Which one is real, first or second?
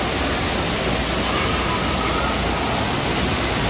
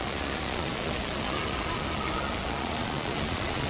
first